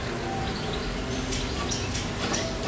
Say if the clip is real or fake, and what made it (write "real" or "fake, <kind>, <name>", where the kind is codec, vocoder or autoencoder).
real